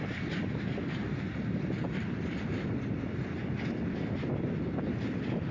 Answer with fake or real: real